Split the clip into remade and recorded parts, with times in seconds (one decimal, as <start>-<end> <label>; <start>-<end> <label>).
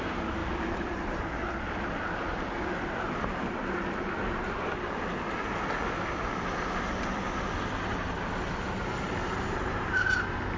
0.0-0.4 recorded; 0.4-1.2 remade; 1.2-9.2 recorded; 9.2-10.0 remade; 10.0-10.6 recorded